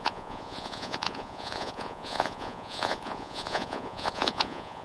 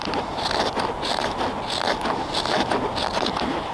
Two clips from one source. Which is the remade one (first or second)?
first